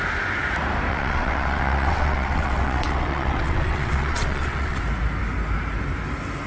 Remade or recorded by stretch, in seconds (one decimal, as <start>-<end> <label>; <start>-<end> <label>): 0.0-0.9 recorded; 0.9-4.8 remade; 4.8-6.5 recorded